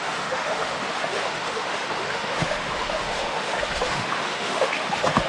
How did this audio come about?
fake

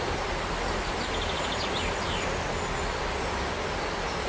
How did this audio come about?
real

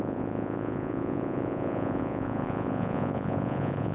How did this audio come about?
fake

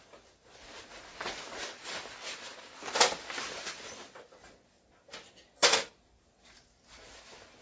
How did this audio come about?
real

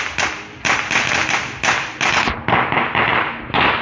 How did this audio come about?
real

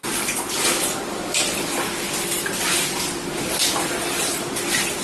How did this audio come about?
real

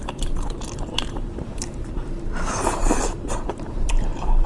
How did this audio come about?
fake